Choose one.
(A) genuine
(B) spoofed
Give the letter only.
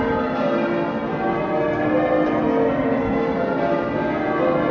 A